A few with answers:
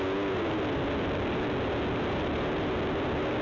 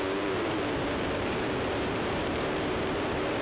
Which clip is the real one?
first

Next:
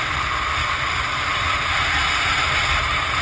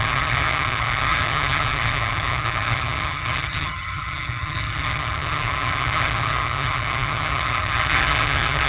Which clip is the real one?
first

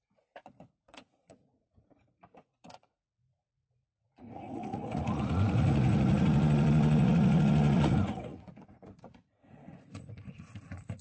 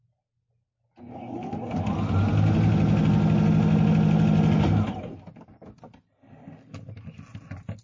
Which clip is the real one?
second